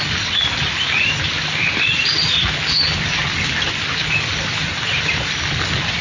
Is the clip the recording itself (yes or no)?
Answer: yes